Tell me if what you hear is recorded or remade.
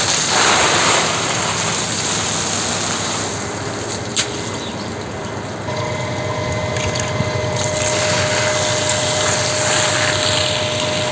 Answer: recorded